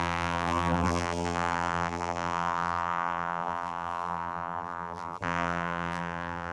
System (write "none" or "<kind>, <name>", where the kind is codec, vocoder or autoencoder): vocoder, BigVGAN v2